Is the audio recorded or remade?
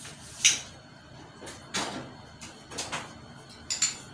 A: recorded